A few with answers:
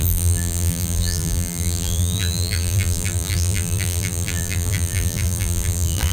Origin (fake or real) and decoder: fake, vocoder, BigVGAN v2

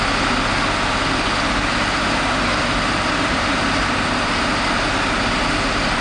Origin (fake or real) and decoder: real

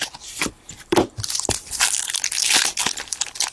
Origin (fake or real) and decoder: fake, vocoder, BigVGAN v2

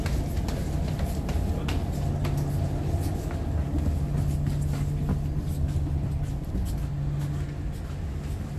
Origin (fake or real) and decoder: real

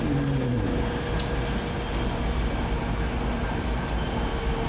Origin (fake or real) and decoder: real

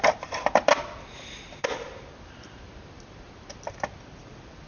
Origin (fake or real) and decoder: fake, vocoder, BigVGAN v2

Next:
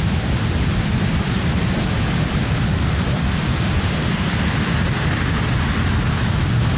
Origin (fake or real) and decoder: real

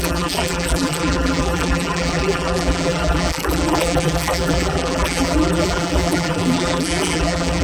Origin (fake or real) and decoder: fake, vocoder, BigVGAN v2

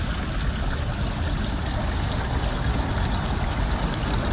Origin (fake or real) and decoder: real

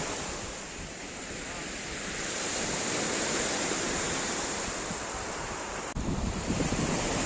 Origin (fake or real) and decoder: fake, vocoder, BigVGAN v2